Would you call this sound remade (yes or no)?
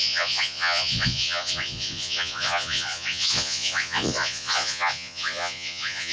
yes